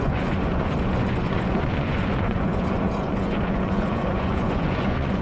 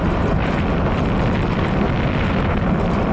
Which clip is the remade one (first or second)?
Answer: first